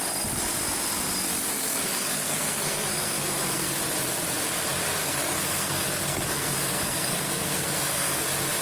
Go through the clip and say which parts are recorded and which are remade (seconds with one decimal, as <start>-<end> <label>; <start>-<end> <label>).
0.0-1.5 recorded; 1.5-3.7 remade; 3.7-5.0 recorded; 5.0-8.2 remade; 8.2-8.6 recorded